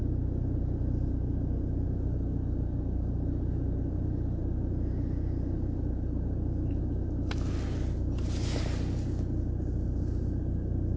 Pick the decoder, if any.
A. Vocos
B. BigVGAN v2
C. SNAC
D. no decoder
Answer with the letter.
D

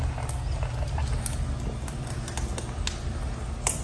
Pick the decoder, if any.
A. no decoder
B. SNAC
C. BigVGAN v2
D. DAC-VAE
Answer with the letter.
A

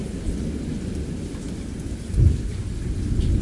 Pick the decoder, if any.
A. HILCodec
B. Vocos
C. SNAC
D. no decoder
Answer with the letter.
D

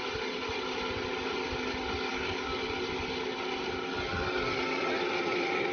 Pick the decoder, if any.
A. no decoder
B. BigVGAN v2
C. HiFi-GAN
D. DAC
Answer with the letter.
A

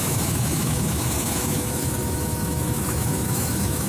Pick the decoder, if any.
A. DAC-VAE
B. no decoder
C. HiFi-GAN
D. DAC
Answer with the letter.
A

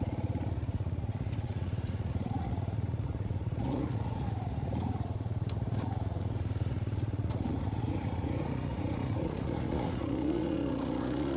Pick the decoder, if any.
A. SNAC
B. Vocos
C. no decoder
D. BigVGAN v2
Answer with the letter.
B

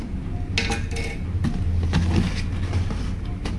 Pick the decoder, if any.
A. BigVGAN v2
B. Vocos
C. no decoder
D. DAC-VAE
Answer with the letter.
C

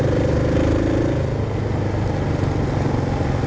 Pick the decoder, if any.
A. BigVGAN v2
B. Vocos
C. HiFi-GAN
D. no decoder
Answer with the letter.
D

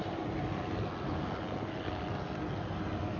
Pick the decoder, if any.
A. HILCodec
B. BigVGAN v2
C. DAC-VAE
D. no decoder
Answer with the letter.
D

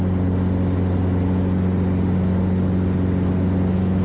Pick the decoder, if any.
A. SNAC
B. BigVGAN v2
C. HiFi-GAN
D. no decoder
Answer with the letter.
D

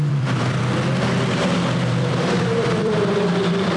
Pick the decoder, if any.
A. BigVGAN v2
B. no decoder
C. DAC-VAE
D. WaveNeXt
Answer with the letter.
A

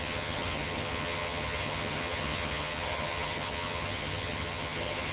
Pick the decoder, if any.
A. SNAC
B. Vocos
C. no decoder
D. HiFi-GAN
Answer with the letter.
D